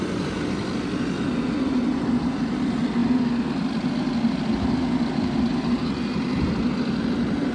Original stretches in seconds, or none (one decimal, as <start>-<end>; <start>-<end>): 0.0-5.5; 6.6-7.5